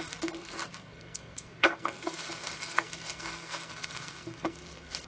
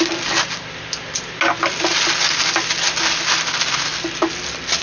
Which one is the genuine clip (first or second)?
second